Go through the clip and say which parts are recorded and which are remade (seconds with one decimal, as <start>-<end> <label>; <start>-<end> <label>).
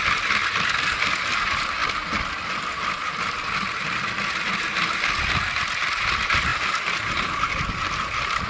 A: 0.0-8.5 recorded